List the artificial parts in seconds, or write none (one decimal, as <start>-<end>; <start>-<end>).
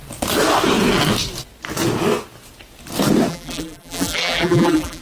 3.3-5.0